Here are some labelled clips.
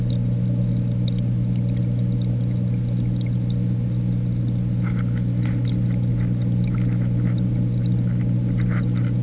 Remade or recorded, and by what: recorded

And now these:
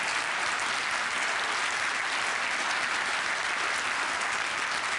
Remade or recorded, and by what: recorded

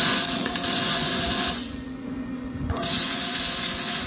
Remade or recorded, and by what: remade, vocoder, Vocos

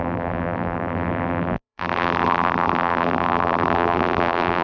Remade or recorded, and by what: remade, vocoder, BigVGAN v2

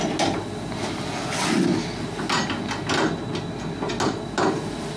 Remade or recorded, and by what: recorded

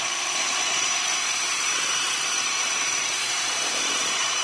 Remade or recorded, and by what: remade, vocoder, Vocos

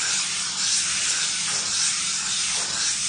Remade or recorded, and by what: recorded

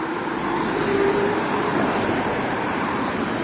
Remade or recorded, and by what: remade, vocoder, BigVGAN v2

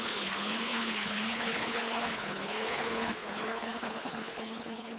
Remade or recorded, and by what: remade, codec, HILCodec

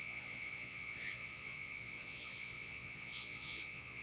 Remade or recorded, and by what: remade, vocoder, Vocos